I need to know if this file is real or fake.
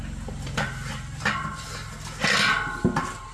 real